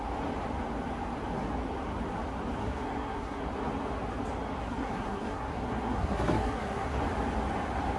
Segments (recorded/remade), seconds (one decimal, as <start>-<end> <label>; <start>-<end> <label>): 0.0-2.6 recorded; 2.6-3.4 remade; 3.4-4.6 recorded; 4.6-7.0 remade; 7.0-8.0 recorded